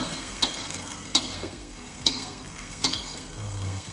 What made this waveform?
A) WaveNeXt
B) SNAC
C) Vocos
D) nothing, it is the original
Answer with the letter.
B